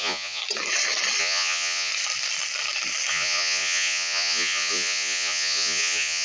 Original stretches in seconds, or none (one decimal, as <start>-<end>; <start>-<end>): 0.4-1.2; 1.9-3.1